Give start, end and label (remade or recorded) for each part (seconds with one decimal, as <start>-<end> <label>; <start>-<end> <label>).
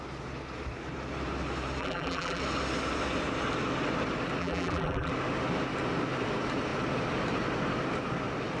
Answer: 0.0-1.8 recorded; 1.8-2.4 remade; 2.4-4.4 recorded; 4.4-5.1 remade; 5.1-8.6 recorded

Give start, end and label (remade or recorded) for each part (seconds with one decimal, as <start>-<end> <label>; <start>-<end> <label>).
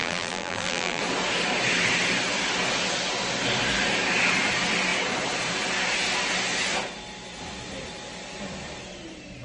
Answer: 0.0-1.0 remade; 1.0-9.4 recorded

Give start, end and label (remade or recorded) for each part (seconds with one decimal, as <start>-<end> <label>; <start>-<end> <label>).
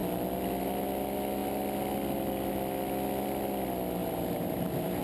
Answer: 0.0-4.0 recorded; 4.0-5.0 remade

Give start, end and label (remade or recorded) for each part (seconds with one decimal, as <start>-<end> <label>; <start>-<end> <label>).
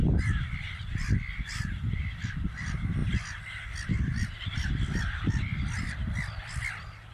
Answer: 0.0-3.0 remade; 3.0-4.0 recorded; 4.0-7.1 remade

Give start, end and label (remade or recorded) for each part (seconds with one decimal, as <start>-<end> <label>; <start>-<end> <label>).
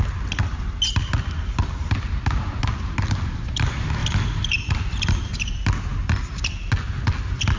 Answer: 0.0-4.0 recorded; 4.0-4.7 remade; 4.7-7.6 recorded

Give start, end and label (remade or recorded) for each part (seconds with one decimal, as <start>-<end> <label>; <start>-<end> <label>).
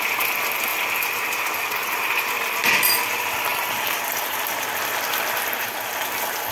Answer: 0.0-0.7 recorded; 0.7-1.5 remade; 1.5-3.5 recorded; 3.5-5.7 remade; 5.7-6.5 recorded